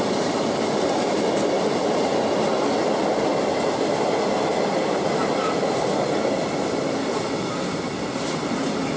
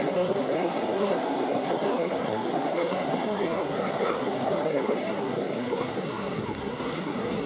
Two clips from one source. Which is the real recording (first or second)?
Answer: first